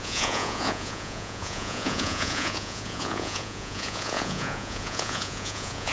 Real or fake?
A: fake